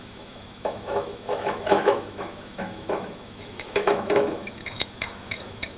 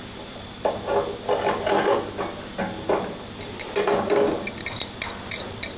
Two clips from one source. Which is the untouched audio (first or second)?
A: second